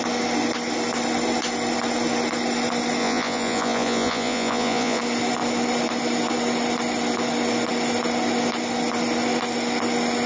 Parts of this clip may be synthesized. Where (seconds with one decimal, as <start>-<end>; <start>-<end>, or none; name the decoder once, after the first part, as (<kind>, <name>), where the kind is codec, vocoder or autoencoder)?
3.0-5.0 (vocoder, Vocos)